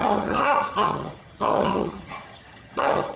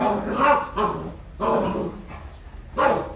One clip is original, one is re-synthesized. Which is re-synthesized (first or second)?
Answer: first